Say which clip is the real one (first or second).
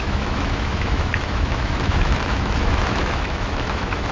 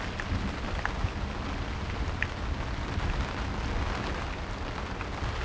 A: second